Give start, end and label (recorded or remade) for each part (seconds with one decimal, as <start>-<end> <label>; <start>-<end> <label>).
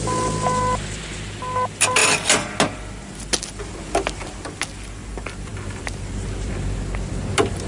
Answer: 0.0-7.7 recorded